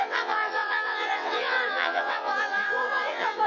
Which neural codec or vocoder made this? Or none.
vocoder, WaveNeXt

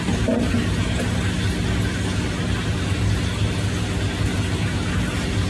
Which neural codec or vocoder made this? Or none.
none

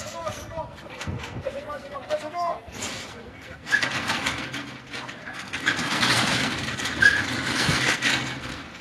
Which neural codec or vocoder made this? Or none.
codec, SNAC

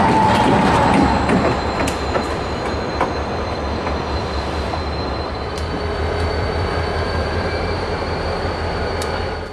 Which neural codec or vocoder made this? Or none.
vocoder, BigVGAN v2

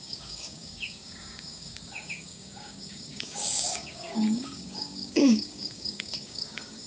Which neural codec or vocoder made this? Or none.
codec, DAC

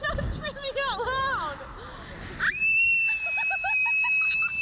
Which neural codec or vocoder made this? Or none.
none